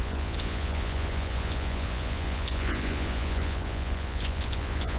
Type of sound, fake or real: fake